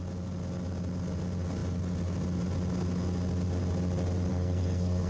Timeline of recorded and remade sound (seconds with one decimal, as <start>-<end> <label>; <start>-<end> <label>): 0.0-4.3 recorded; 4.3-5.1 remade

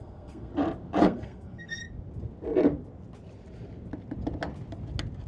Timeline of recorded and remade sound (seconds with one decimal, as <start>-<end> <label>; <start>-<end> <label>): 0.0-0.5 remade; 0.5-1.0 recorded; 1.0-1.8 remade; 1.8-5.3 recorded